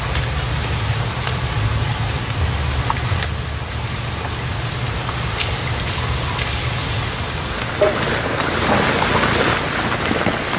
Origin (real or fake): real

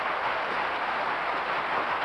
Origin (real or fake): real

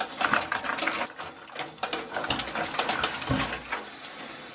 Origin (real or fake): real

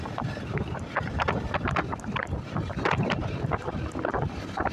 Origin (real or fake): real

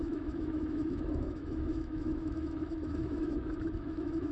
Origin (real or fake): fake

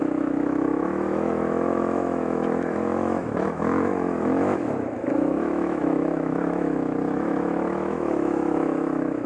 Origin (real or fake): fake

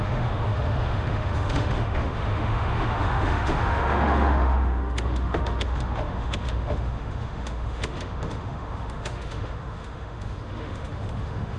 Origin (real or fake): fake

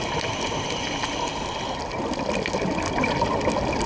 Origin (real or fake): real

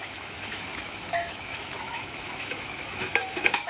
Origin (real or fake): fake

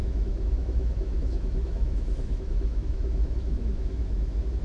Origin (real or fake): fake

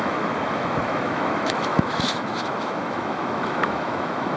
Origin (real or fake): fake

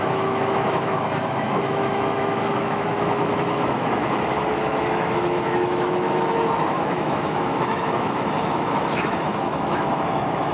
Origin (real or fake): fake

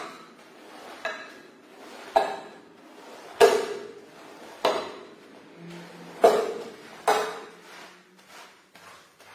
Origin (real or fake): real